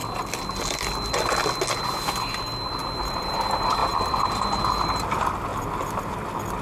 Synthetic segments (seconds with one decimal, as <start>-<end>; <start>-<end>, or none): 2.8-3.3; 3.8-4.4